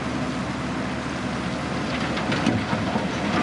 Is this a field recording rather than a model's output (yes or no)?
yes